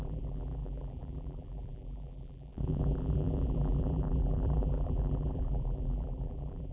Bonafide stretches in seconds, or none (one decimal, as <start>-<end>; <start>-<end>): none

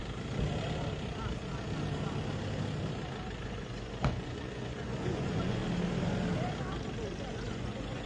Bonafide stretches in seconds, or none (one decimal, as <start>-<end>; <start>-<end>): 0.0-3.4; 5.6-7.3

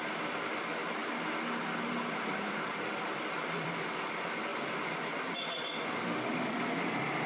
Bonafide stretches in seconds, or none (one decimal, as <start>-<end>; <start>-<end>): 1.0-1.9

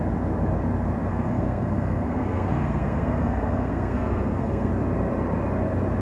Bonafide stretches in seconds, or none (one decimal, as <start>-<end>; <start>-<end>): 0.0-1.1; 4.7-6.0

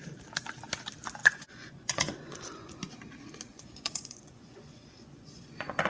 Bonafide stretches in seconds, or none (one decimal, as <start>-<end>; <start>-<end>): 0.0-1.2; 2.8-3.5

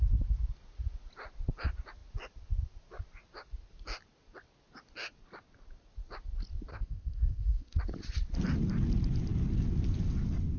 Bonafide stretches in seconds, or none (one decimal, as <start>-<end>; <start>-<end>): 0.0-6.7; 7.8-10.6